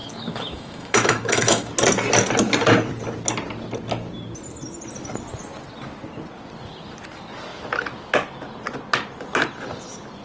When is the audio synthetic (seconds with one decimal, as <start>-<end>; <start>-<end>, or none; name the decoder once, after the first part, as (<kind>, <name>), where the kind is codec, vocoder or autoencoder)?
0.0-1.7 (autoencoder, DAC-VAE)